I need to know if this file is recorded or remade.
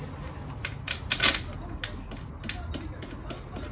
recorded